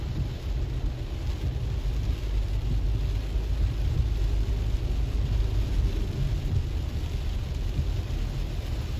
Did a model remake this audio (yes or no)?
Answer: no